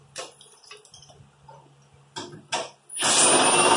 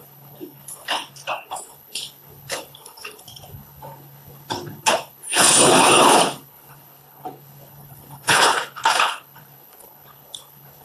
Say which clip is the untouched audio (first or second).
first